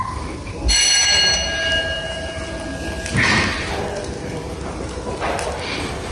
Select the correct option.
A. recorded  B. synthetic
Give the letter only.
A